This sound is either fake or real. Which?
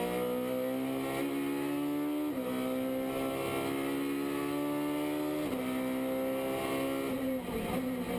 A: real